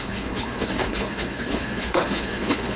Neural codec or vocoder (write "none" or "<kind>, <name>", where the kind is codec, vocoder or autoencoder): codec, HILCodec